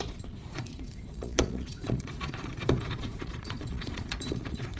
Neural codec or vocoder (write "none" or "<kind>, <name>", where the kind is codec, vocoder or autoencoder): vocoder, Vocos